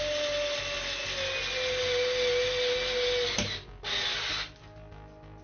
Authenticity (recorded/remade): recorded